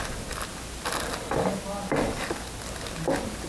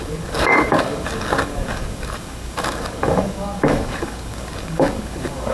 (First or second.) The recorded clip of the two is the first